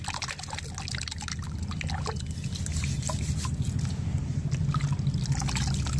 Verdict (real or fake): real